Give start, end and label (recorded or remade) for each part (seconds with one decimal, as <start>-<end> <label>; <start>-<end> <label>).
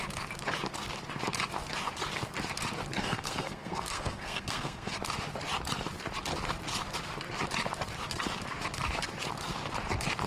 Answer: 0.0-3.0 recorded; 3.0-4.9 remade; 4.9-10.3 recorded